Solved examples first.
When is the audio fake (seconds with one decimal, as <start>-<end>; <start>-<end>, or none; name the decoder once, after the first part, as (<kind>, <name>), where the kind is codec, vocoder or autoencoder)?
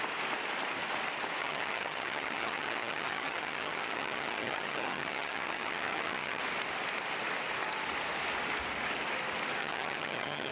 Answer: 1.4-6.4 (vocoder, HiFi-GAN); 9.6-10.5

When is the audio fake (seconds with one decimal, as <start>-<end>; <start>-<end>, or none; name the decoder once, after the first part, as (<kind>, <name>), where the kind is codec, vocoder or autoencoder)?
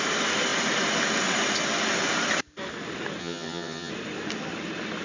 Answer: 3.2-3.9 (vocoder, HiFi-GAN)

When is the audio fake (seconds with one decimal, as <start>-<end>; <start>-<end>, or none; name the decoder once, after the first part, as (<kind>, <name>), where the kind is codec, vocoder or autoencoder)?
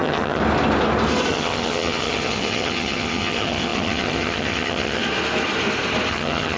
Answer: 0.0-0.4 (vocoder, HiFi-GAN); 1.3-5.0; 6.1-6.6